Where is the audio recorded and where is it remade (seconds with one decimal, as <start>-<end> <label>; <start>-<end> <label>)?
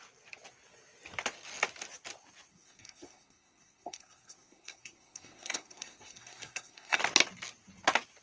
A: 0.0-2.5 recorded; 2.5-7.0 remade; 7.0-8.2 recorded